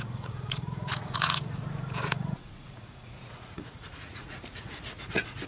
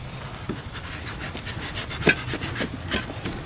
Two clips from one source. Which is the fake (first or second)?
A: first